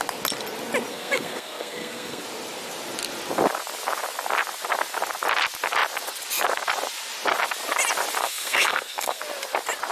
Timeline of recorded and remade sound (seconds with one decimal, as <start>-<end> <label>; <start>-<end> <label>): 0.0-0.9 recorded; 0.9-2.2 remade; 2.2-8.2 recorded; 8.2-9.2 remade; 9.2-9.9 recorded